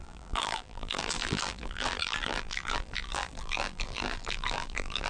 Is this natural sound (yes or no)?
no